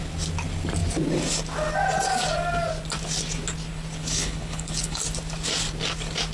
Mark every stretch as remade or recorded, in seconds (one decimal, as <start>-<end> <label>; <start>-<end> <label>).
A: 0.0-4.0 recorded; 4.0-5.0 remade; 5.0-6.3 recorded